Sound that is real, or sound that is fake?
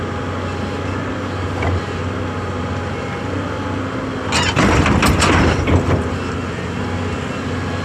real